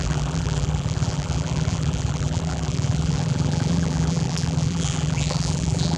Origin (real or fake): fake